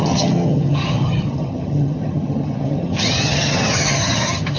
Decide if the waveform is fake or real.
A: fake